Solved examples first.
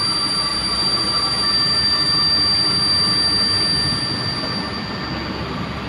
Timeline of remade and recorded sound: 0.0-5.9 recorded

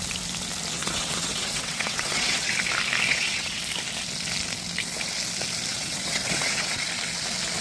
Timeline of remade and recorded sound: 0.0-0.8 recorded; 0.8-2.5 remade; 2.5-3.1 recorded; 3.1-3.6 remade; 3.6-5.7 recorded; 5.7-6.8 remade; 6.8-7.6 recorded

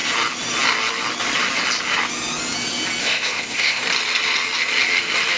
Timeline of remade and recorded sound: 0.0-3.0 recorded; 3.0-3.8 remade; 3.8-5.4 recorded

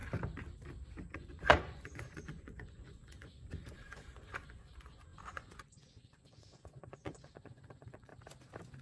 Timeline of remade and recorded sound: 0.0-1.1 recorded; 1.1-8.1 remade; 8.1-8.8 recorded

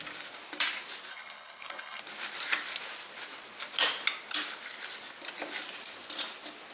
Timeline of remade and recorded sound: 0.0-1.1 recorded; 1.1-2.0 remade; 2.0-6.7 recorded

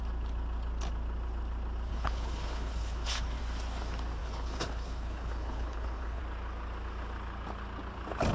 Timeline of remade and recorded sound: 0.0-1.9 recorded; 1.9-3.4 remade; 3.4-4.2 recorded; 4.2-6.2 remade; 6.2-8.3 recorded

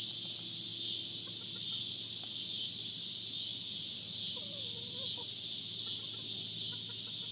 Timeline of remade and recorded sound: 0.0-7.3 recorded